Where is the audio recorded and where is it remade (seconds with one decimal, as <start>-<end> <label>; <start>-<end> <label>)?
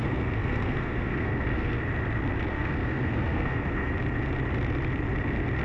0.0-1.8 remade; 1.8-2.5 recorded; 2.5-3.9 remade; 3.9-5.6 recorded